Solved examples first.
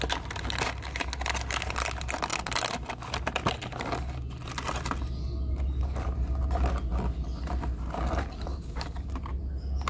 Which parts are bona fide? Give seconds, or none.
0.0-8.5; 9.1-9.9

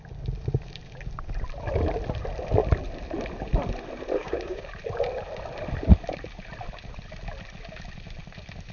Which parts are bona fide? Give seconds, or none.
0.0-4.2; 4.7-8.7

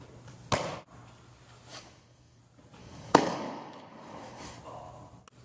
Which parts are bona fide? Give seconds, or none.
0.0-1.7; 2.4-2.8; 4.6-5.4

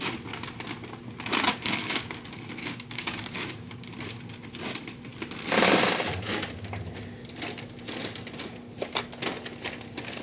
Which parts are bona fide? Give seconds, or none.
0.0-1.5; 2.2-2.6; 3.7-10.2

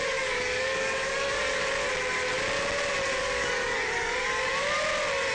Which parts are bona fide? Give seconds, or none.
1.6-3.2; 4.5-5.3